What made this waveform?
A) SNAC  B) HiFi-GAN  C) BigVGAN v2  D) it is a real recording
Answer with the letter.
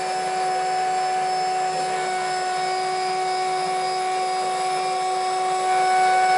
D